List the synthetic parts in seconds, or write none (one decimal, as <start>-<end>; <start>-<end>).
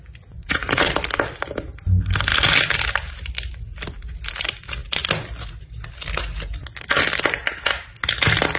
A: 0.4-0.9